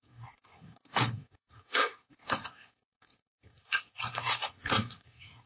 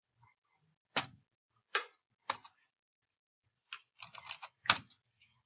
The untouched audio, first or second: second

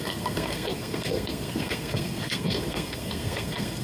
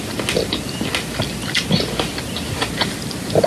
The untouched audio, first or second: second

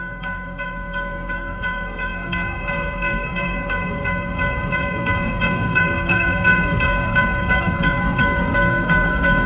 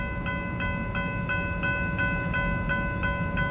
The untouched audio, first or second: second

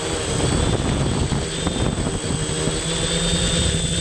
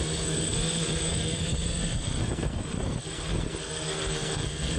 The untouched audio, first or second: first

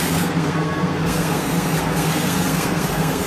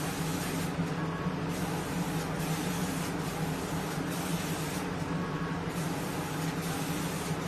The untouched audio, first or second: second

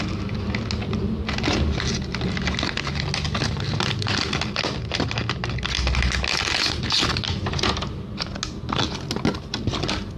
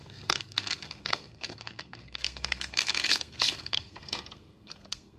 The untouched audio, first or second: first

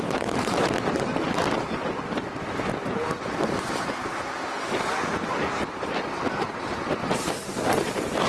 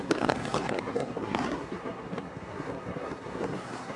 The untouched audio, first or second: first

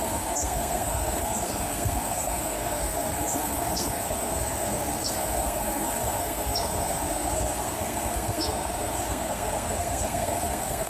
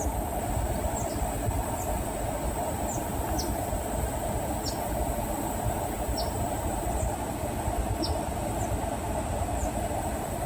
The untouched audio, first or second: second